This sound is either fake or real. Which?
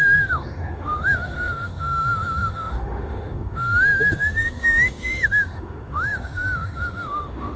fake